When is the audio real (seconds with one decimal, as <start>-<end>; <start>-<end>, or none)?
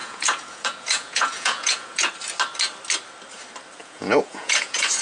2.1-3.8